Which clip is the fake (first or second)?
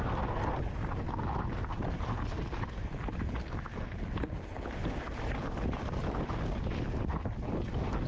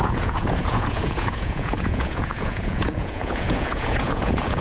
second